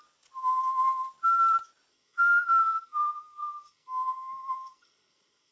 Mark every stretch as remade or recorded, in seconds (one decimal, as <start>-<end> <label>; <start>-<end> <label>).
0.0-1.9 recorded; 1.9-5.5 remade